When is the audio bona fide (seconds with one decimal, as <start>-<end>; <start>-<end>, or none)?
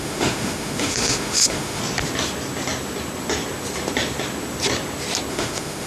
1.8-5.3